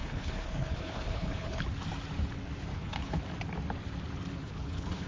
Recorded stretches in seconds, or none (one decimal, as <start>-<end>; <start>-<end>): 1.6-2.7; 3.2-4.4